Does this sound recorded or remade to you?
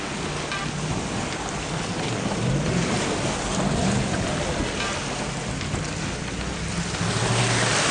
recorded